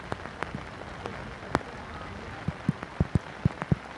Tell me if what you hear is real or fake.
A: real